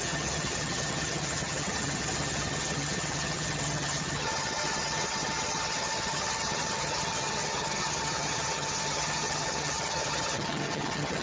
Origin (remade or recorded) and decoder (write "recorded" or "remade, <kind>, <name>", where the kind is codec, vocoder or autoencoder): remade, vocoder, HiFi-GAN